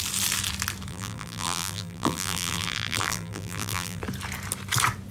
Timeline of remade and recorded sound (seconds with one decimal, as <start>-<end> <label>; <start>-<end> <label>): 0.0-0.9 recorded; 0.9-4.0 remade; 4.0-5.1 recorded